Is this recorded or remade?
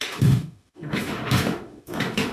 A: remade